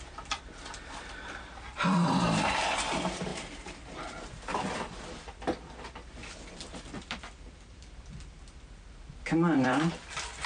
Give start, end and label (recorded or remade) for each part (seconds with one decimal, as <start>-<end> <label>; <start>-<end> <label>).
0.0-10.5 remade